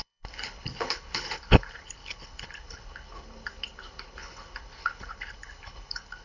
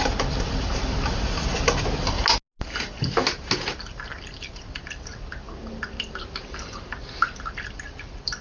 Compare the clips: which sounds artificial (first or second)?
first